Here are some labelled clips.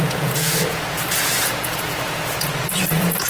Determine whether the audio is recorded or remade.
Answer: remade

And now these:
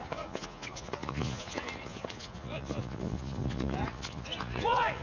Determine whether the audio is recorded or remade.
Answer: remade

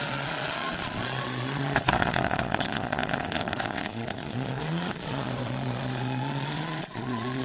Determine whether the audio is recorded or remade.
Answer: remade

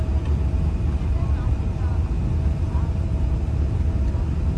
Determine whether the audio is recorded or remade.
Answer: recorded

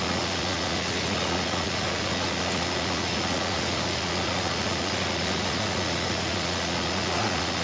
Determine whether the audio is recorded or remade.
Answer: remade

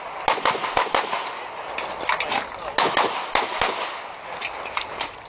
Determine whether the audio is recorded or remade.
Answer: recorded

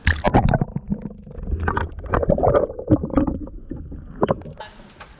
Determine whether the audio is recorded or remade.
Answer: recorded